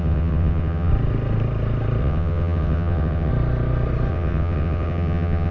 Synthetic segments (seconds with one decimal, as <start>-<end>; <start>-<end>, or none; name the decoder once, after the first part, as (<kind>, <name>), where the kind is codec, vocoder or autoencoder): 0.0-0.9 (vocoder, WaveNeXt); 2.0-3.3; 4.1-5.5